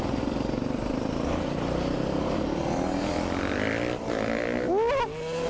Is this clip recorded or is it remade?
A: recorded